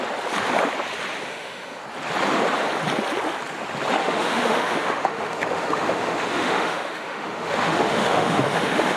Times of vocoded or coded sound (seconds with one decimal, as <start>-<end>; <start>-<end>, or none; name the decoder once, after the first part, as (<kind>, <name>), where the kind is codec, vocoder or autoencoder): 1.3-1.8 (autoencoder, DAC-VAE); 4.0-9.0